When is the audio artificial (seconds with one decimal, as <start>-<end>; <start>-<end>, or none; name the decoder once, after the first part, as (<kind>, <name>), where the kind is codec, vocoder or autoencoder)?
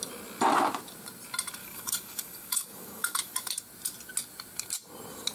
1.6-3.5 (codec, DAC)